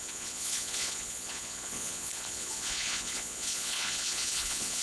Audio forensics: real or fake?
fake